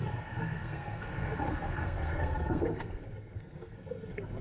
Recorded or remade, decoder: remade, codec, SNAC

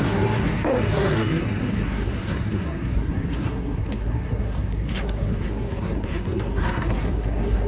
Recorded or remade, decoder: remade, codec, SNAC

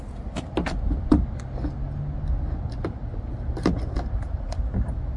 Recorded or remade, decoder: recorded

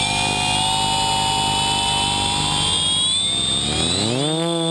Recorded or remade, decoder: recorded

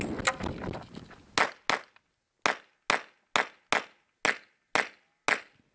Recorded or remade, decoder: recorded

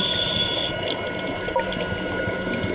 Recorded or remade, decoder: recorded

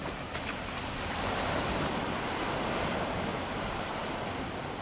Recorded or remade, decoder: recorded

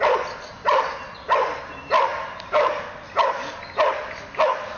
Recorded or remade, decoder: recorded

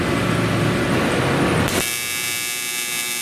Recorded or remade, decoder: recorded